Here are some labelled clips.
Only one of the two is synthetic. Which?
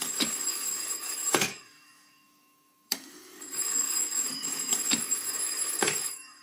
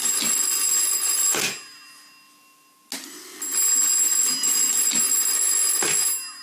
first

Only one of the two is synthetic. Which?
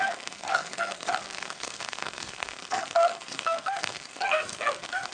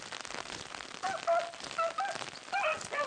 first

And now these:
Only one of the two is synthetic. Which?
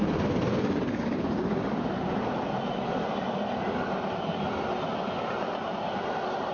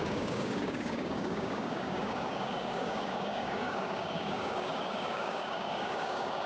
second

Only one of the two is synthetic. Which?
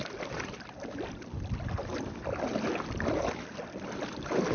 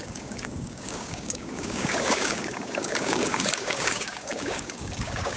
second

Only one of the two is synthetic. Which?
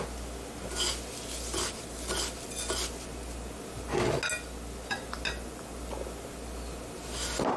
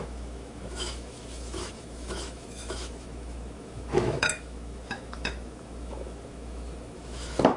second